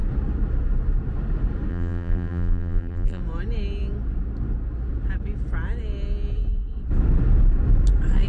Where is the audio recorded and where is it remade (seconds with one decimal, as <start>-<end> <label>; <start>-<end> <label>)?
0.0-1.7 recorded; 1.7-3.2 remade; 3.2-8.3 recorded